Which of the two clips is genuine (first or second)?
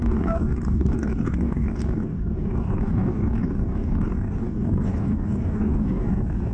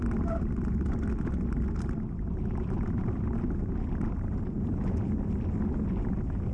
second